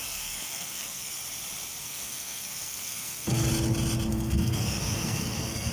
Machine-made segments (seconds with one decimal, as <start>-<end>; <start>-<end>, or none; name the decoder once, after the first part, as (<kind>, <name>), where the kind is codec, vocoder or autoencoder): 0.0-1.1 (codec, SNAC); 1.8-3.5; 4.1-5.7